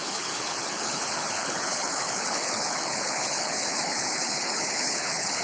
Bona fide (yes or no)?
no